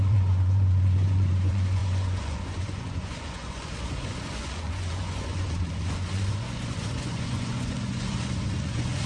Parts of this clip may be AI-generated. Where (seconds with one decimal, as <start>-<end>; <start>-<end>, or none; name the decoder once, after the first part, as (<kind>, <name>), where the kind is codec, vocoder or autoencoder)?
0.0-9.1 (vocoder, Vocos)